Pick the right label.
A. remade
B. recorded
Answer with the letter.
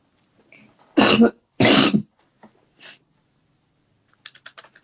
B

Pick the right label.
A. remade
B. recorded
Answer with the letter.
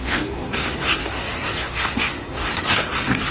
A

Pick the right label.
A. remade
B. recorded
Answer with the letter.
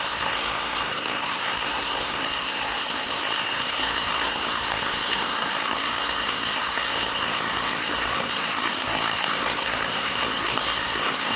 A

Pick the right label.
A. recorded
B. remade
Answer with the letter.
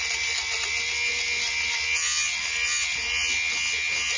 A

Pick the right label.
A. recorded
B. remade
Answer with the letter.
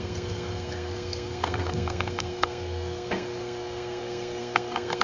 B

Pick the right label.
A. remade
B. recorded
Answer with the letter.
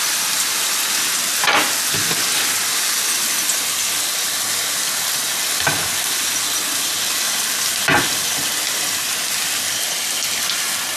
B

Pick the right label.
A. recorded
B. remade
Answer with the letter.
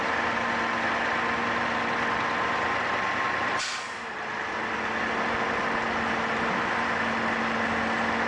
A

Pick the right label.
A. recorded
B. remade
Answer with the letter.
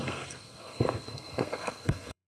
B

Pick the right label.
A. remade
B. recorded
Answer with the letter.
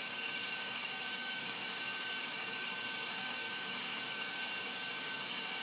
A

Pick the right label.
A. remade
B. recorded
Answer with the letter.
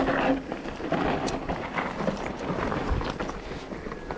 A